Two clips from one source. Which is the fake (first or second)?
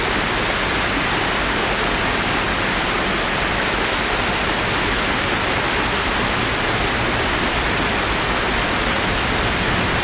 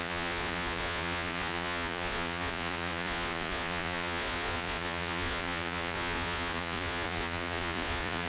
second